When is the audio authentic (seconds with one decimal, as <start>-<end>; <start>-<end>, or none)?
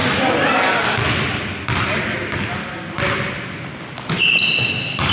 0.0-5.1